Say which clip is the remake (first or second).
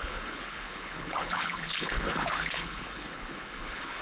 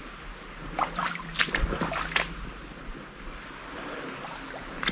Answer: first